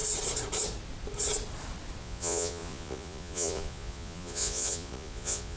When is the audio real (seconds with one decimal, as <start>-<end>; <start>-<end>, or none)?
0.0-2.0